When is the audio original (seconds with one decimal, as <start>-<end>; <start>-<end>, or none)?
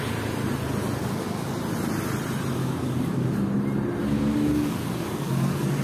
0.0-1.0; 1.5-2.6; 3.3-4.0